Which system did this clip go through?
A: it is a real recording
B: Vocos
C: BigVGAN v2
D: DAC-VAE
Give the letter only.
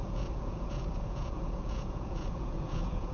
B